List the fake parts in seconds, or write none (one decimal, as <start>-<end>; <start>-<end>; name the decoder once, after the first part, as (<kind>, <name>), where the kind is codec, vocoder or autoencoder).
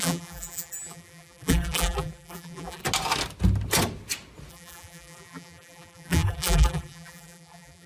0.0-2.8 (vocoder, BigVGAN v2); 4.5-7.9